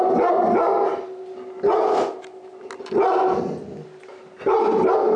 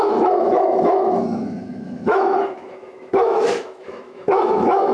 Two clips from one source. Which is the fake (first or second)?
second